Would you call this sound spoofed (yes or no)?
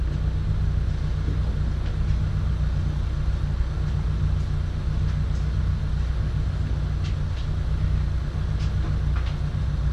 no